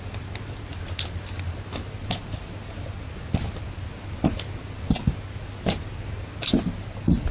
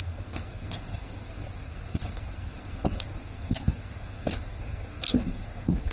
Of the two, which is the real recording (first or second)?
first